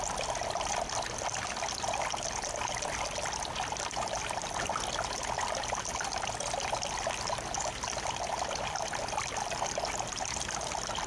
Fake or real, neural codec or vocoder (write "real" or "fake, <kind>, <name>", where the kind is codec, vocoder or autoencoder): real